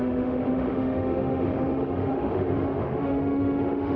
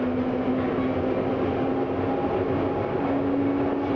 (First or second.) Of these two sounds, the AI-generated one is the first